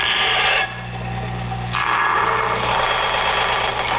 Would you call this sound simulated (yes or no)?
no